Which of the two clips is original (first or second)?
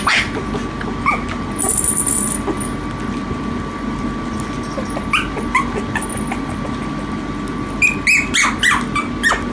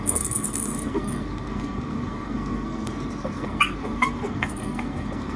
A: first